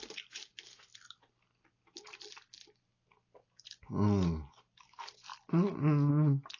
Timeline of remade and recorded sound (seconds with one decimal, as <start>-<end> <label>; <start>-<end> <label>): 0.0-6.6 recorded